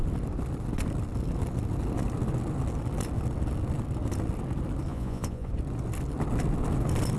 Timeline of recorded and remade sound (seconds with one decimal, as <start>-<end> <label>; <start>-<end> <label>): 0.0-4.9 recorded; 4.9-5.5 remade; 5.5-7.2 recorded